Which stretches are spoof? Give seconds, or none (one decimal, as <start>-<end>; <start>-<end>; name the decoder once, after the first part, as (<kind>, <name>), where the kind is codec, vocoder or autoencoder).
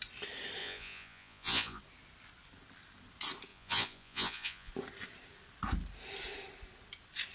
0.6-1.8 (vocoder, Vocos); 3.5-4.7